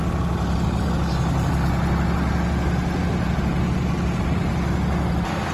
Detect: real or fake real